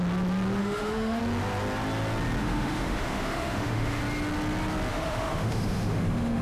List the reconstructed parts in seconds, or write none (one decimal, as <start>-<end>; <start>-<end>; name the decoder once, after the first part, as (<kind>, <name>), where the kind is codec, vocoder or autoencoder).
0.6-1.2 (autoencoder, DAC-VAE); 2.4-4.0; 4.9-6.4